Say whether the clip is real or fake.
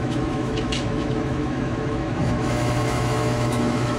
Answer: fake